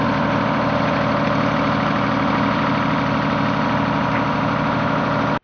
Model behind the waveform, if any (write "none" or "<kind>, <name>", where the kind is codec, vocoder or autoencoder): none